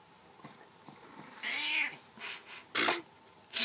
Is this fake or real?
real